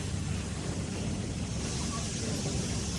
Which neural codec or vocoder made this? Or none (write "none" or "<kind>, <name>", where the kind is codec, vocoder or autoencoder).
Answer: none